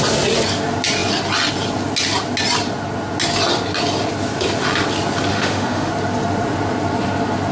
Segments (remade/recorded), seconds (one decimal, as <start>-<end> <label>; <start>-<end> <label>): 0.0-5.3 recorded; 5.3-5.9 remade; 5.9-7.5 recorded